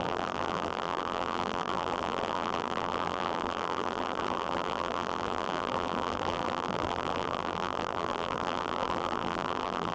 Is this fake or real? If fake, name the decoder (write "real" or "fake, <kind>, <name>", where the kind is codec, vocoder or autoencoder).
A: fake, vocoder, BigVGAN v2